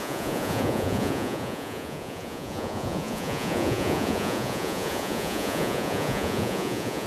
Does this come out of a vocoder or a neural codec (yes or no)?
yes